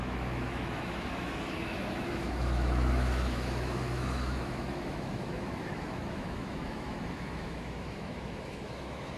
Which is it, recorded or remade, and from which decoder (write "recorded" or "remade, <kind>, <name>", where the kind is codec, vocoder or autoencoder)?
remade, autoencoder, DAC-VAE